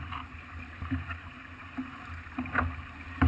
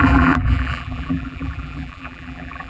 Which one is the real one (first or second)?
first